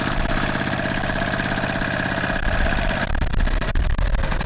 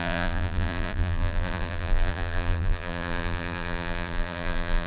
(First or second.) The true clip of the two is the first